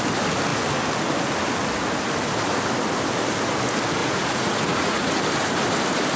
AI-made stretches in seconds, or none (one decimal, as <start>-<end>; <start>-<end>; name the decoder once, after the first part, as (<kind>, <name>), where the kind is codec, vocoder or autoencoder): 4.0-5.1 (vocoder, Vocos)

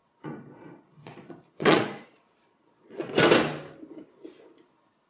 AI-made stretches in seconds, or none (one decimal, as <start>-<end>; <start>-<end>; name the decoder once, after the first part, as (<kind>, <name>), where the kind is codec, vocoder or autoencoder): 0.0-3.1 (vocoder, Vocos)

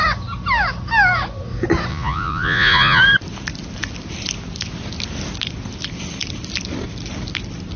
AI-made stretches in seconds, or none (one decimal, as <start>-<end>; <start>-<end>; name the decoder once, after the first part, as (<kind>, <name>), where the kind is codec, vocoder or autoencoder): 1.9-3.0 (vocoder, Vocos)

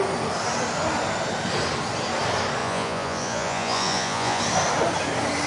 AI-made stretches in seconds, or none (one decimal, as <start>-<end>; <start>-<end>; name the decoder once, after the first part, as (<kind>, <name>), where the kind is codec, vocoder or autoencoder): 2.6-4.4 (vocoder, Vocos)

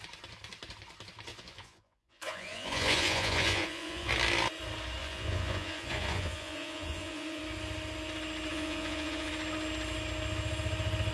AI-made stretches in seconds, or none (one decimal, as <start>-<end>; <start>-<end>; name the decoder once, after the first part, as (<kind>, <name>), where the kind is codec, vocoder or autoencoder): 1.3-4.1 (vocoder, Vocos); 5.0-7.4; 8.5-9.3

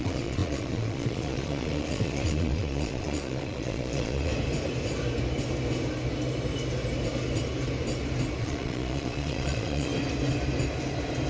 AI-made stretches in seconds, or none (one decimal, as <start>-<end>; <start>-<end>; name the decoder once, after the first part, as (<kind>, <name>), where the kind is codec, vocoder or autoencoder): 0.0-4.3 (vocoder, Vocos); 8.4-9.9